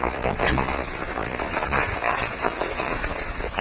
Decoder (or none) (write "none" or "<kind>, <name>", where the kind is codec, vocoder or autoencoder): vocoder, Vocos